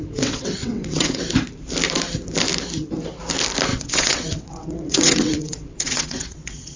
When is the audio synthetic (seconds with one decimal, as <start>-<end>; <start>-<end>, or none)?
0.0-1.2; 3.7-6.8